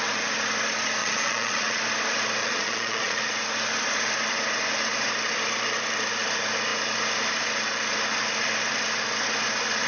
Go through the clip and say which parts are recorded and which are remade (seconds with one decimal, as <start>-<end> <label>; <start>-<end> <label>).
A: 0.0-1.0 recorded; 1.0-1.8 remade; 1.8-2.4 recorded; 2.4-3.3 remade; 3.3-9.9 recorded